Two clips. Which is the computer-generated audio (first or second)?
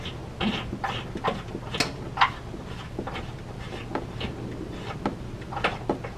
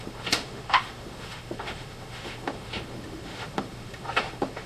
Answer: second